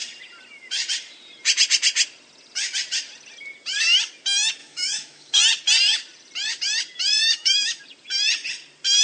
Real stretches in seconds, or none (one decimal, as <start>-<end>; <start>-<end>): 0.0-4.6; 5.4-7.2; 7.8-9.0